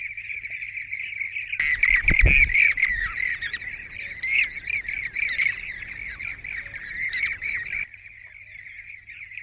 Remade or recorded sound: recorded